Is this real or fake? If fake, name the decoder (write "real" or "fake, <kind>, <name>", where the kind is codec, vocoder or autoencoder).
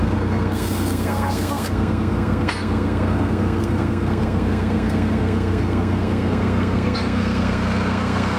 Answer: fake, codec, SNAC